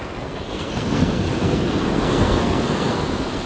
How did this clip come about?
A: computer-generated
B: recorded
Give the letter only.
A